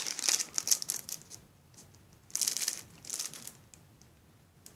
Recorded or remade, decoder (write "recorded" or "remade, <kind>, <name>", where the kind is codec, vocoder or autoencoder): recorded